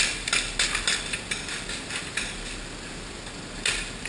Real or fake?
real